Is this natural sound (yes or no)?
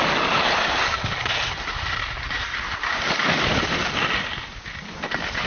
yes